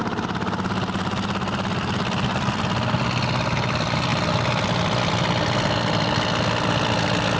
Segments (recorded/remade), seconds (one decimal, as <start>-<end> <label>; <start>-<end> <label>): 0.0-7.4 recorded